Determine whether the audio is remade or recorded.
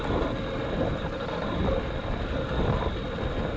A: recorded